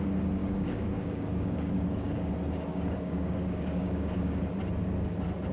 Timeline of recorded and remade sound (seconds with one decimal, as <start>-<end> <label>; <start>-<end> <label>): 0.0-0.4 recorded; 0.4-2.3 remade; 2.3-2.7 recorded; 2.7-4.4 remade; 4.4-5.5 recorded